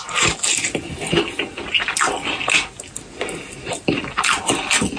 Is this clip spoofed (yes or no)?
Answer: no